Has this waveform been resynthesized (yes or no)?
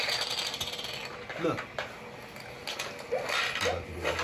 no